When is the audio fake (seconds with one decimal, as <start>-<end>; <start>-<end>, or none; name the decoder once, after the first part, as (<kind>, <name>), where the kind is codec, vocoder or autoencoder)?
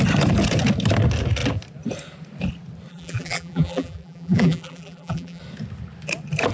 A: 2.9-5.4 (vocoder, BigVGAN v2)